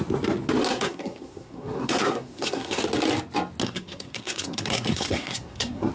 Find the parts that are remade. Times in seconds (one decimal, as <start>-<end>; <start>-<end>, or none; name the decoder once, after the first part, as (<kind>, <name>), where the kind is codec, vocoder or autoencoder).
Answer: 0.6-2.8 (codec, SNAC); 3.6-5.9